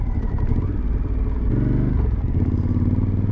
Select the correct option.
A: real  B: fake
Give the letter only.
A